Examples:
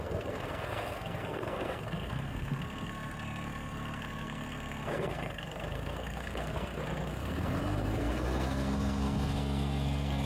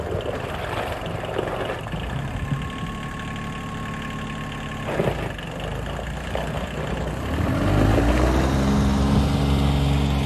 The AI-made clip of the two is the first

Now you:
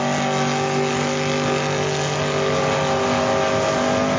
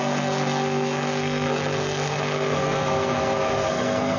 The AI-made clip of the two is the second